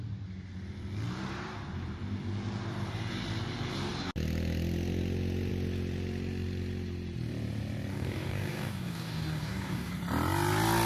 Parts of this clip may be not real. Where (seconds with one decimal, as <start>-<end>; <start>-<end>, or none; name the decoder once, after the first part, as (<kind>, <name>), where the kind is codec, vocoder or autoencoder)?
7.9-9.9 (codec, DAC)